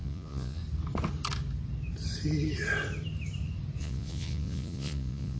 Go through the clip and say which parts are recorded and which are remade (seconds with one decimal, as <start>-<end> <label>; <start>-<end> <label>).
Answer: 0.0-0.6 remade; 0.6-3.8 recorded; 3.8-5.4 remade